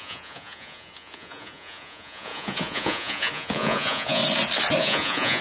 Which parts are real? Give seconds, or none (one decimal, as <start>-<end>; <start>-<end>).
4.2-4.8